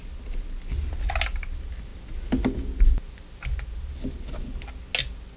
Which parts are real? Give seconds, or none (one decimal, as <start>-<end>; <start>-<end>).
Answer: 0.0-5.4